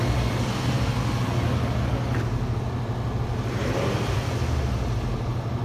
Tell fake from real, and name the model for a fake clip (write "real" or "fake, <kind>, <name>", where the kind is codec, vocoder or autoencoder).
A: real